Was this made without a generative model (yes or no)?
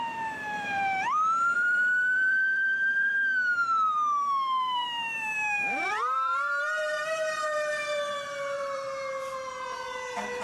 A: no